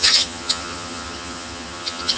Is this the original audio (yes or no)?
no